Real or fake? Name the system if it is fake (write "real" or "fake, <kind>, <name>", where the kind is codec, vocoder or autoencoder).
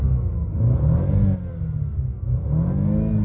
real